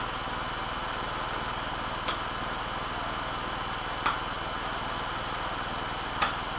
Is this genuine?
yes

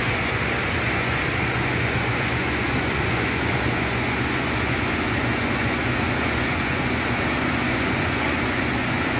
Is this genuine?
no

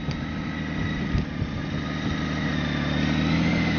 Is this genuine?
yes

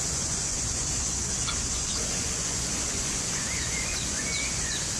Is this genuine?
no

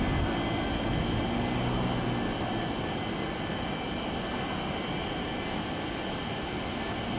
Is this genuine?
yes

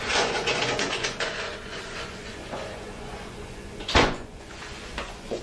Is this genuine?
no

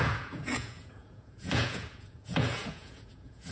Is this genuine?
no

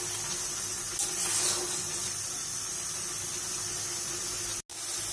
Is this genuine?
yes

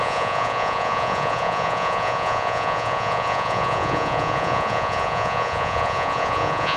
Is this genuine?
no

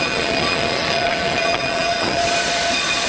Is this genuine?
no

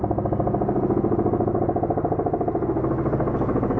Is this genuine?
yes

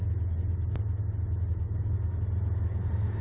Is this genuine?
yes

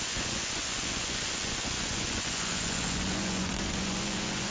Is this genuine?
no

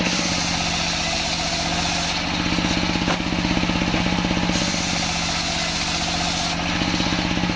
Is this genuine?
yes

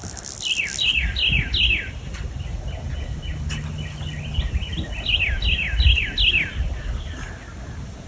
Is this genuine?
yes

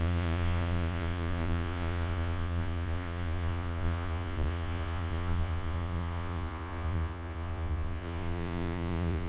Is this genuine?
no